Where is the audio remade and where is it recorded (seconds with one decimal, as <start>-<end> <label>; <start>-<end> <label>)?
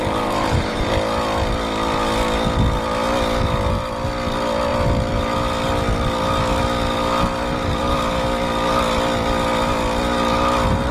0.0-0.9 remade; 0.9-10.9 recorded